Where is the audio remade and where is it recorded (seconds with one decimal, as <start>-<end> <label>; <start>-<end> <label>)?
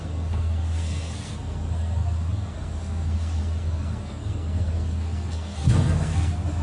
0.0-6.6 remade